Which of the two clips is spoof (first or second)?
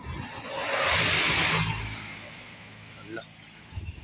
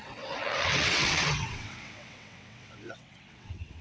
second